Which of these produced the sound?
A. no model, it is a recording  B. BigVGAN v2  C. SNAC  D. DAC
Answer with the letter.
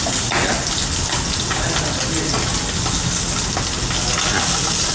A